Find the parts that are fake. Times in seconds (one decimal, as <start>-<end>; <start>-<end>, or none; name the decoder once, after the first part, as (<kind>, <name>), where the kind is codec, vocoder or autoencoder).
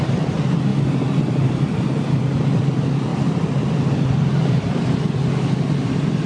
0.0-3.1 (vocoder, BigVGAN v2); 4.5-6.3